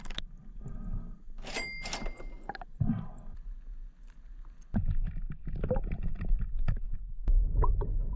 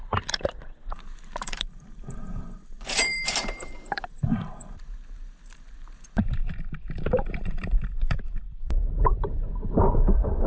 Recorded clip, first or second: first